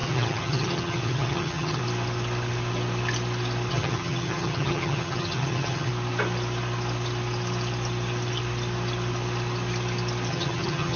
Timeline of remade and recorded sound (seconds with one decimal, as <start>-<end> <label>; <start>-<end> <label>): 0.0-1.8 remade; 1.8-3.7 recorded; 3.7-5.9 remade; 5.9-10.3 recorded; 10.3-11.0 remade